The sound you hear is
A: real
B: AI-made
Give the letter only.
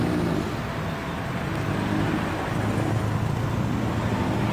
A